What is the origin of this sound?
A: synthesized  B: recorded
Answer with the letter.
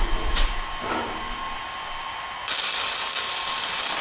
B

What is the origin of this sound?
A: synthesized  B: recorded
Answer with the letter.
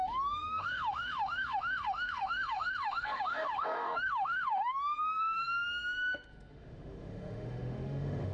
A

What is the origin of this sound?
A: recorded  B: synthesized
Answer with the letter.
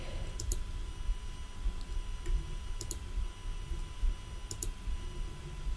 A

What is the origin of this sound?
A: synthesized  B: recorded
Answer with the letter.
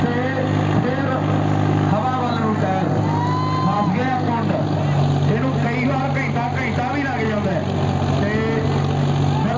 B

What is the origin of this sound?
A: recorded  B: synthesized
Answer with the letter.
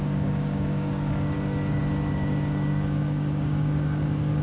B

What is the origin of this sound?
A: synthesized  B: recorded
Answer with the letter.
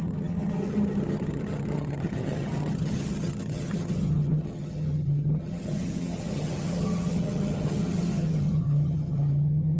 A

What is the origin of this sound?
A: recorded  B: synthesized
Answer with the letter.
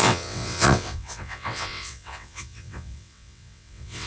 B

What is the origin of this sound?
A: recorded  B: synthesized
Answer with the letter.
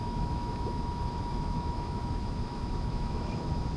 B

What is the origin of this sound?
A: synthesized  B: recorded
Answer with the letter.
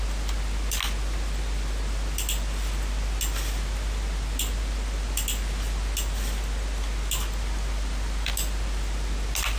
B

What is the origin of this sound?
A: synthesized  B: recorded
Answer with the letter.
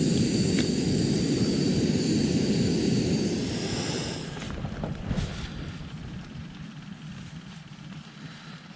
B